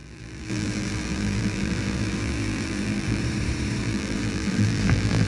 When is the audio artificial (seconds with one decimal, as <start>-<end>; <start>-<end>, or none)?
0.0-3.2; 3.8-5.3